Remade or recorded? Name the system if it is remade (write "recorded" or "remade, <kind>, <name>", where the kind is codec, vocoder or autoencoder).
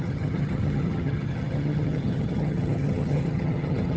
remade, vocoder, HiFi-GAN